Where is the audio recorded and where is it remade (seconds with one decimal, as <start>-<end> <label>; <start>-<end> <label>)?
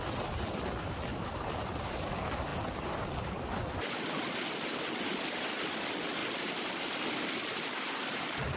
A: 0.0-6.2 recorded; 6.2-7.2 remade; 7.2-8.6 recorded